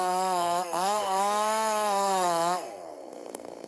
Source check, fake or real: fake